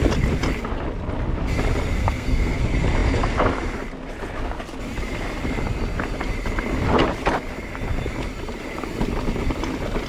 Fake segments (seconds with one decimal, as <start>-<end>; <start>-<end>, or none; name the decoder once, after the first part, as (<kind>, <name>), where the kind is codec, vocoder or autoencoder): 2.0-2.6 (codec, SNAC)